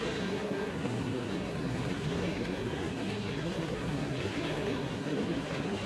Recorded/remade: remade